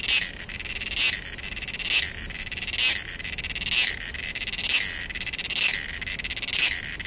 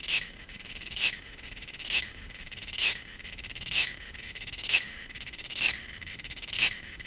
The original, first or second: first